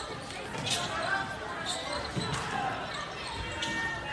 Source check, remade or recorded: recorded